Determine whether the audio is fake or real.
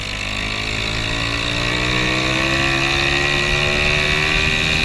real